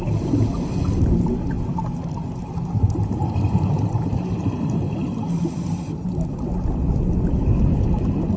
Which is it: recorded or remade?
recorded